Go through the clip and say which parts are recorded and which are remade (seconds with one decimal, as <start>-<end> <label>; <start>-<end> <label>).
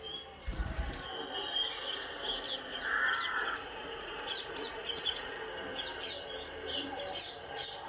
0.0-2.7 recorded; 2.7-5.4 remade; 5.4-7.9 recorded